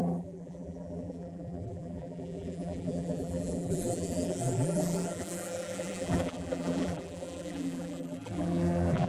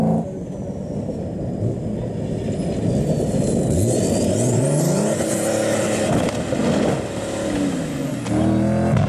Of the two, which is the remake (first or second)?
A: first